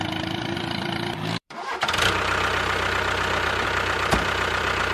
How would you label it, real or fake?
fake